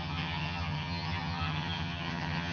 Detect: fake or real fake